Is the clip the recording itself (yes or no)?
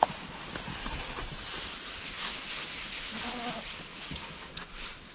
yes